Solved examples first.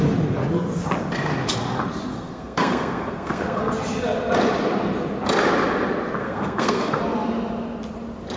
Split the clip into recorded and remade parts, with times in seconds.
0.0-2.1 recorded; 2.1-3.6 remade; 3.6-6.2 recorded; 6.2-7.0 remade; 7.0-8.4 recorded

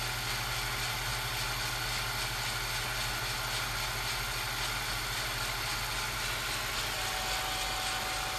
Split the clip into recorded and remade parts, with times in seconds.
0.0-8.4 recorded

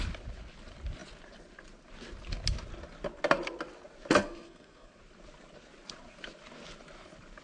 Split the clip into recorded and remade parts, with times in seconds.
0.0-4.2 recorded; 4.2-5.0 remade; 5.0-7.4 recorded

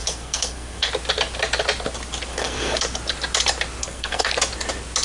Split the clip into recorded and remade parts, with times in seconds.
0.0-0.9 remade; 0.9-2.3 recorded; 2.3-2.8 remade; 2.8-3.8 recorded; 3.8-4.3 remade; 4.3-5.0 recorded